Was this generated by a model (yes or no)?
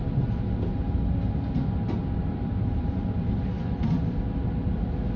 no